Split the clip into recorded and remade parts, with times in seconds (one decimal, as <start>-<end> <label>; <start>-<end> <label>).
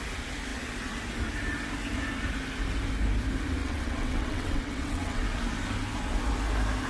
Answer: 0.0-3.6 recorded; 3.6-5.2 remade; 5.2-6.9 recorded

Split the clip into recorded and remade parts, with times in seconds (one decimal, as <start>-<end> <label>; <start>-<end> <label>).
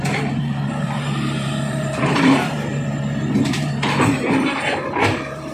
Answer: 0.0-2.7 remade; 2.7-3.4 recorded; 3.4-5.5 remade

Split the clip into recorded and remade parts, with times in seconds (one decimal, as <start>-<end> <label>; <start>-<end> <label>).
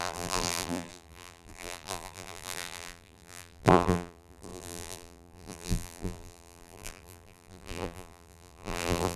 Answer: 0.0-9.2 remade